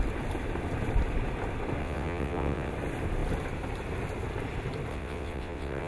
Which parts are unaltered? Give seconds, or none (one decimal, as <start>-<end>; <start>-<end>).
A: 0.0-1.8; 2.7-4.9